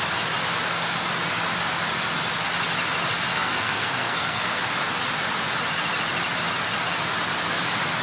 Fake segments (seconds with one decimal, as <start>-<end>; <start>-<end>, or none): 3.3-4.6